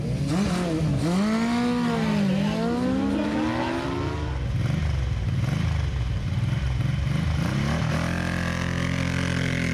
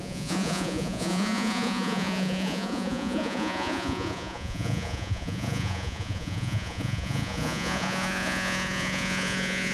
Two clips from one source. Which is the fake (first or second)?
second